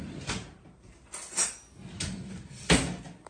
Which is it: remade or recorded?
recorded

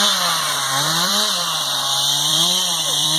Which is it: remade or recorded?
remade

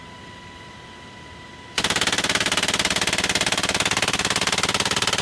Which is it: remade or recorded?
recorded